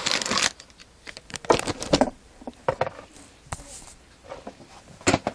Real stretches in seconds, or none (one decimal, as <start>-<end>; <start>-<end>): 0.0-0.8; 2.5-5.3